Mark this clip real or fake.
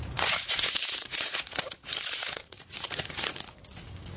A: fake